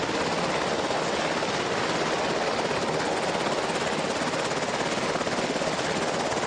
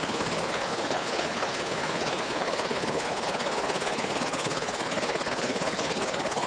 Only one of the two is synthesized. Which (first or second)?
second